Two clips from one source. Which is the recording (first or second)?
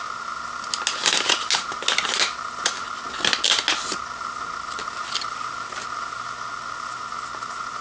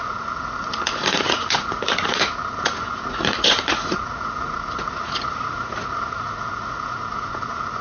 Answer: first